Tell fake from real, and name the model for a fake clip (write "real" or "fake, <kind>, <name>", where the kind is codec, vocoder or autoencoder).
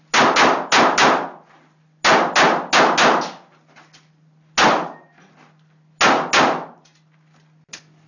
real